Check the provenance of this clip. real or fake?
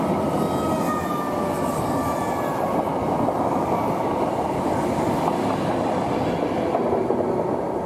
real